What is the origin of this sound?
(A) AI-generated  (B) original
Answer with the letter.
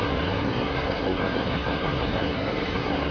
A